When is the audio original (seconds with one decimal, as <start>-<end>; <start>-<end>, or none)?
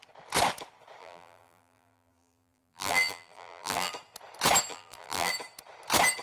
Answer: 0.0-1.0; 3.9-4.7; 5.3-6.2